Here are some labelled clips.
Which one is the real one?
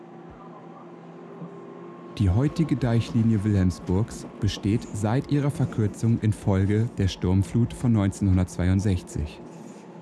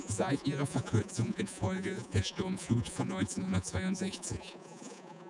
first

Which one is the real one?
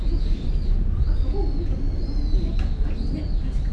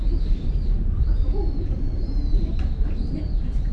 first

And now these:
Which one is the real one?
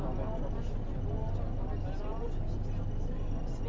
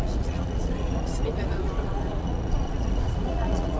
first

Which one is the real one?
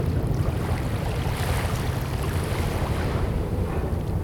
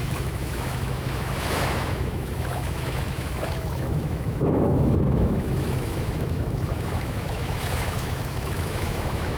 first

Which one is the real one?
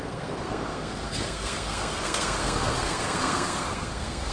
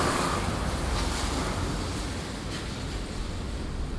second